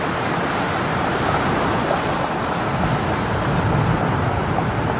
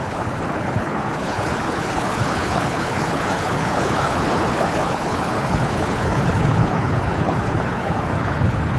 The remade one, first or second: second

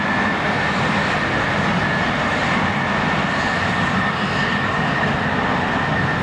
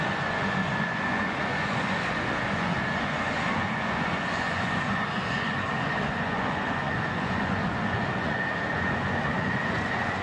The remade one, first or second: second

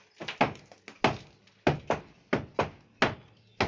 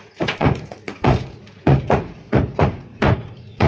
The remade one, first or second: second